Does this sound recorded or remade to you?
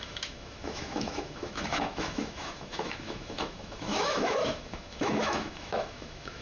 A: remade